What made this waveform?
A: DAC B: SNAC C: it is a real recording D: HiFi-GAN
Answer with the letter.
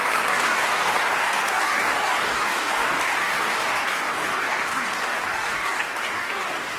A